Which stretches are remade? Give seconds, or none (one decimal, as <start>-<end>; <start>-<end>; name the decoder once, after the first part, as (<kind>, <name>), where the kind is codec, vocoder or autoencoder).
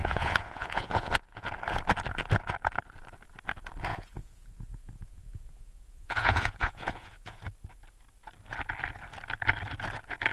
0.0-1.5 (vocoder, Vocos); 3.9-7.4